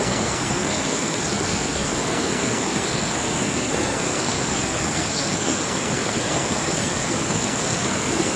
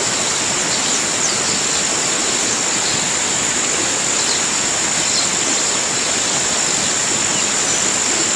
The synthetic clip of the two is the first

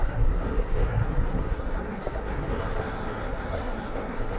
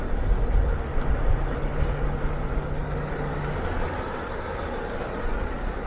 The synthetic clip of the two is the first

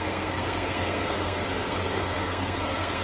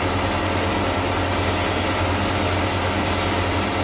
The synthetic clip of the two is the first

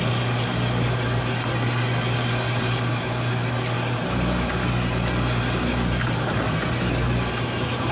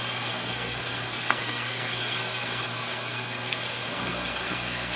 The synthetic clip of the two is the second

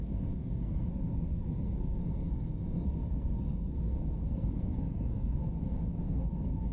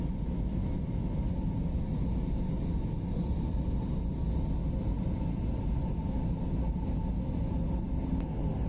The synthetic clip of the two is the first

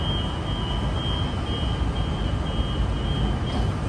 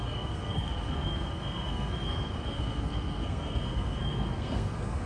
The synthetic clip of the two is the second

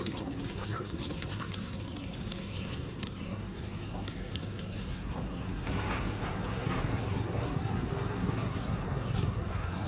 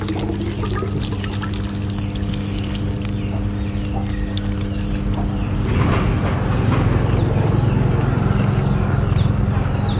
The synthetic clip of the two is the first